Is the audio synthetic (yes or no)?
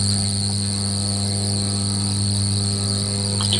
no